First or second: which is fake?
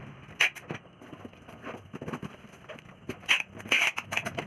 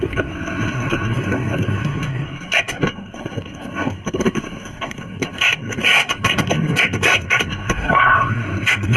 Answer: second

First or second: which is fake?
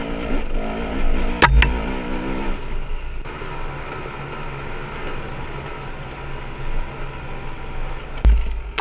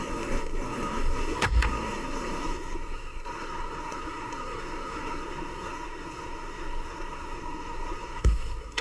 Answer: second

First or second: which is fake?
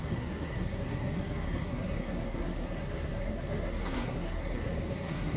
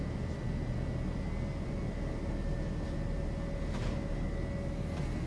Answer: first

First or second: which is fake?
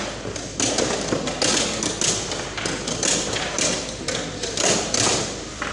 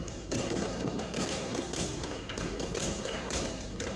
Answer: second